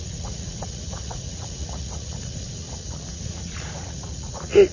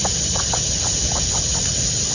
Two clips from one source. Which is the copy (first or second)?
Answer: first